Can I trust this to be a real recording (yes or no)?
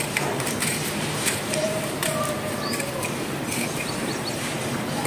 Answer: no